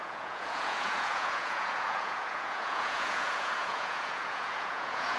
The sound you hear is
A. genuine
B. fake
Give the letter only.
B